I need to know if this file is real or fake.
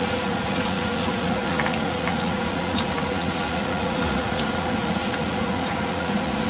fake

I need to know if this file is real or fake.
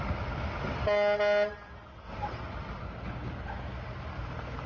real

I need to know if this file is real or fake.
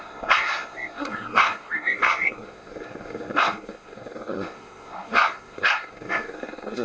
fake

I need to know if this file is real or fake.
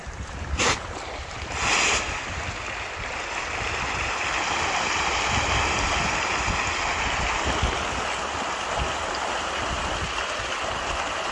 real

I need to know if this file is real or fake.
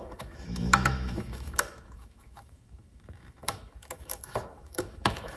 fake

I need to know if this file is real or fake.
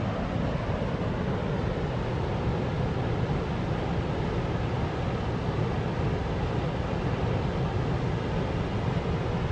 real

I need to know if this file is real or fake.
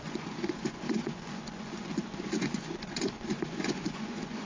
fake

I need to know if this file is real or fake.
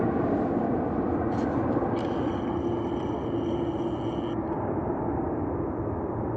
real